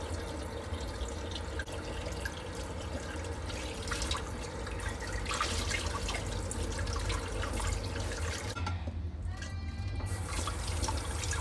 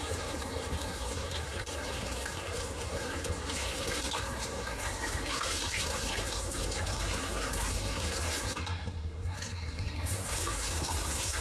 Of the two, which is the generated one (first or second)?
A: second